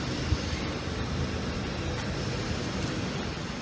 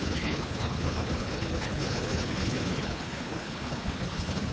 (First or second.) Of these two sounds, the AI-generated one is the second